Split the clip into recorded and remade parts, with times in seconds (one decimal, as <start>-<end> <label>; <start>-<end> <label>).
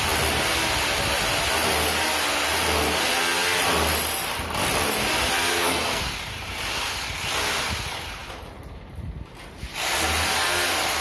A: 0.0-5.5 recorded; 5.5-6.0 remade; 6.0-11.0 recorded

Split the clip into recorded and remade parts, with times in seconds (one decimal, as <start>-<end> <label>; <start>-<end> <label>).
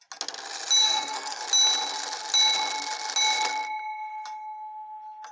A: 0.0-0.8 recorded; 0.8-1.4 remade; 1.4-5.3 recorded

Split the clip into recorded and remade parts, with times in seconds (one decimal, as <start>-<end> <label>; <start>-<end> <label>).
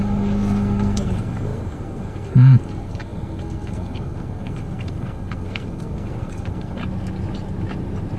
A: 0.0-6.8 remade; 6.8-8.2 recorded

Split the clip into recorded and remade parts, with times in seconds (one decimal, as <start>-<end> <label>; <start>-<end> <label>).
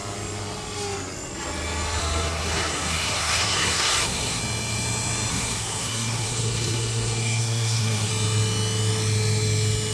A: 0.0-2.0 recorded; 2.0-4.4 remade; 4.4-5.3 recorded; 5.3-8.1 remade; 8.1-9.9 recorded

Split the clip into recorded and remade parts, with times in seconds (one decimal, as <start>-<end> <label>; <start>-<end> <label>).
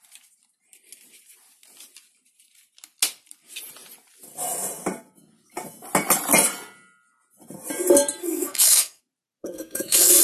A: 0.0-8.2 recorded; 8.2-9.0 remade; 9.0-9.4 recorded; 9.4-10.2 remade